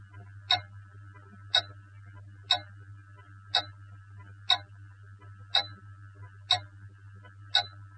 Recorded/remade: recorded